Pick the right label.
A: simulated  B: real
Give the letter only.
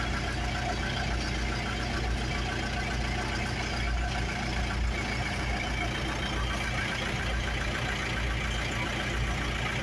B